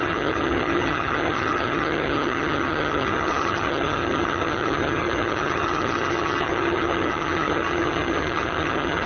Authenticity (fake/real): fake